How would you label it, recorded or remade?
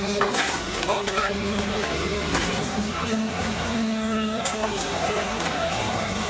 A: remade